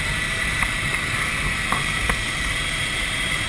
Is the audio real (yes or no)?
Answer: no